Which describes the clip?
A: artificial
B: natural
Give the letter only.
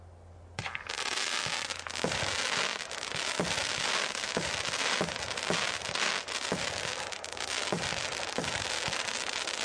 B